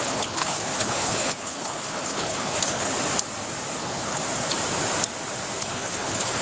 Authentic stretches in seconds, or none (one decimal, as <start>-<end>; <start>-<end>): 2.9-3.8; 4.2-5.6